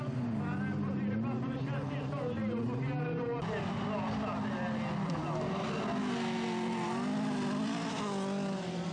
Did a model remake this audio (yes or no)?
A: no